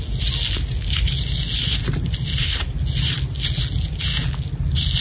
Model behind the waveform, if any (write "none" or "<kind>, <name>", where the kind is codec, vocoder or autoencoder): none